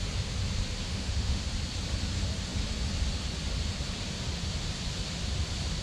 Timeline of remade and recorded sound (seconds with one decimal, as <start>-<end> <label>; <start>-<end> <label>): 0.0-0.9 recorded; 0.9-1.4 remade; 1.4-5.8 recorded